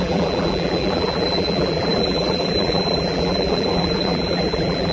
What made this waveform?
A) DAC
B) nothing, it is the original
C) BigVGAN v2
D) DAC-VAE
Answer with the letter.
C